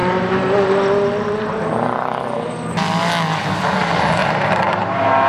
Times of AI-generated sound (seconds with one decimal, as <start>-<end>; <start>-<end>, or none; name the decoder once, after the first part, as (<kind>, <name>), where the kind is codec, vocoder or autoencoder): 4.2-5.3 (vocoder, BigVGAN v2)